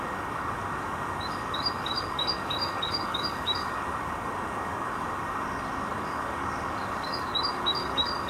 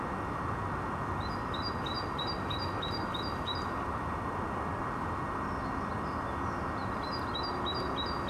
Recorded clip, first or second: second